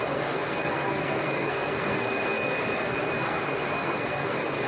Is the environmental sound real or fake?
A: fake